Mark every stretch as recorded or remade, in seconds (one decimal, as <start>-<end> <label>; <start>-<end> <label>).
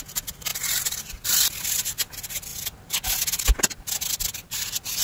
0.0-2.5 remade; 2.5-3.6 recorded; 3.6-5.0 remade